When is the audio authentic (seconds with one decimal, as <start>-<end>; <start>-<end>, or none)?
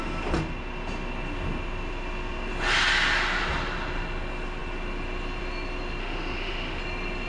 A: 0.0-6.0; 6.8-7.3